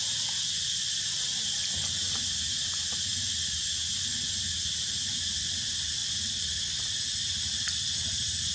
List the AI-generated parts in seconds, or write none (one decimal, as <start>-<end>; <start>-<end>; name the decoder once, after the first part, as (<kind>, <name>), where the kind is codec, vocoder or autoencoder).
none